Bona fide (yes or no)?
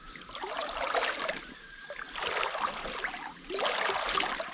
yes